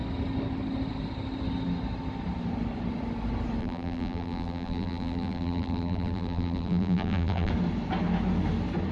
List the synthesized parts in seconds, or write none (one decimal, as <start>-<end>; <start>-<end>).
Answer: 3.6-7.5